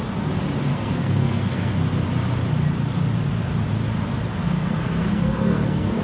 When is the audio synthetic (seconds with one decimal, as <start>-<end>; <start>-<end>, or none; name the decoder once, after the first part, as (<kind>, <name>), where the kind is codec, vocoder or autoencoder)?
0.7-1.7 (codec, SNAC); 4.4-6.0